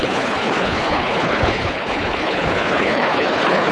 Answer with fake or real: fake